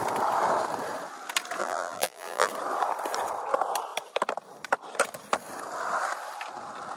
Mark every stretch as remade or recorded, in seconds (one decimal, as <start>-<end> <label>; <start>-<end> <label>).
0.0-1.6 recorded; 1.6-2.5 remade; 2.5-7.0 recorded